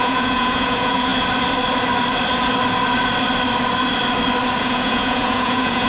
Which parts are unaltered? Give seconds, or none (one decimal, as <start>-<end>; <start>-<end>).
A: 1.1-4.6